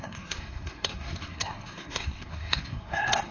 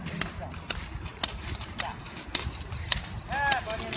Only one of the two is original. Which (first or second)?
second